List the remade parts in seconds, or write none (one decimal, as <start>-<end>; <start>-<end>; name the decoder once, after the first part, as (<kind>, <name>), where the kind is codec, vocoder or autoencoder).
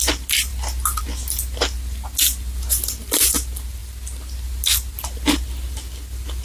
none